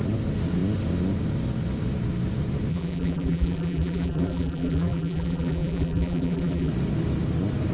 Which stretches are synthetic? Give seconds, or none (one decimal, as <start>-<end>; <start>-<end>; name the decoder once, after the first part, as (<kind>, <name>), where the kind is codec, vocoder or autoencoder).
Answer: 2.7-6.7 (vocoder, BigVGAN v2)